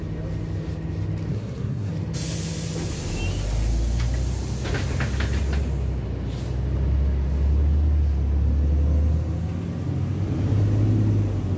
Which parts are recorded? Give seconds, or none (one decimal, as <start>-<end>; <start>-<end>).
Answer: 0.0-1.3; 1.9-11.6